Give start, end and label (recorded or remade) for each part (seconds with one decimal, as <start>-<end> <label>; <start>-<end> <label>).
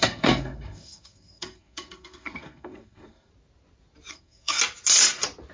0.0-3.3 remade; 3.3-4.1 recorded; 4.1-4.6 remade; 4.6-5.5 recorded